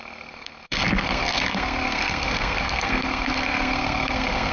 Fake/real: fake